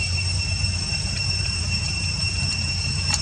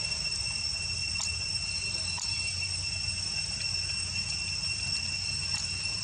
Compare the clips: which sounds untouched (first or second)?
second